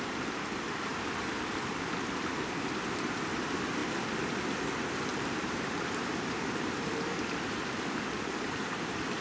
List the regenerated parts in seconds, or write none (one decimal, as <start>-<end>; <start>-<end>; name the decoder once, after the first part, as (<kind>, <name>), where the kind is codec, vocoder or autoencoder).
0.9-2.2 (vocoder, BigVGAN v2); 5.1-6.9